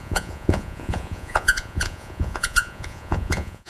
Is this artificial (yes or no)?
yes